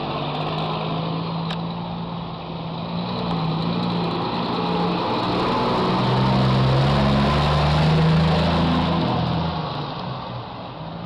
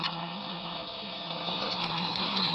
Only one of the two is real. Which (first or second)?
first